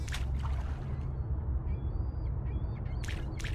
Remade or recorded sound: recorded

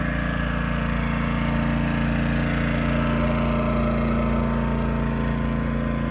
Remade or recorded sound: recorded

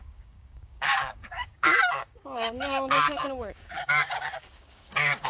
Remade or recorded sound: remade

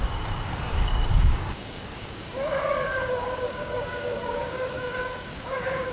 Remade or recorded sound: remade